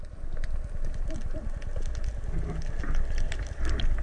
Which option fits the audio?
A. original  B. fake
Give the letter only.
A